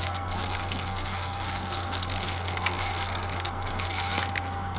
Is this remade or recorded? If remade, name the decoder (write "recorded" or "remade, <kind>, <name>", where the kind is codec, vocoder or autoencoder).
remade, codec, SNAC